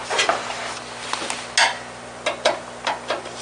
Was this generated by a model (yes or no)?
no